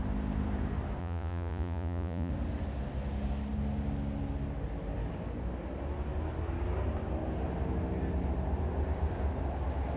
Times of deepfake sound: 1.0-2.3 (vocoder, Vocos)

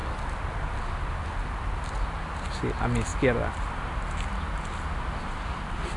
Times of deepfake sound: none

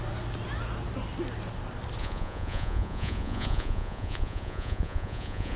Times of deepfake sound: 2.0-5.6 (vocoder, Vocos)